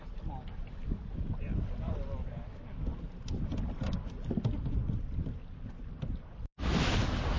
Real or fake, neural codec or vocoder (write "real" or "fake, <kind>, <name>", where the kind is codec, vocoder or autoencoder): real